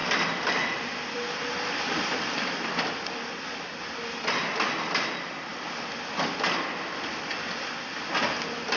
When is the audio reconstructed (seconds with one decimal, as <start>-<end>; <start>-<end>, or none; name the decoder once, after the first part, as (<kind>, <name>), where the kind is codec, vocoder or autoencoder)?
none